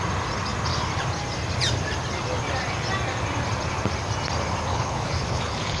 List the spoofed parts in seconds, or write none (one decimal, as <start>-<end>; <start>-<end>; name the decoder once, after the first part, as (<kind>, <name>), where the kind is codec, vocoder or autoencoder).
4.7-5.8 (codec, HILCodec)